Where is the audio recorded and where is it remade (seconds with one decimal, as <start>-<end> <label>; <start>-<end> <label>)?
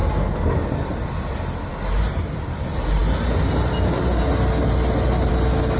0.0-5.8 recorded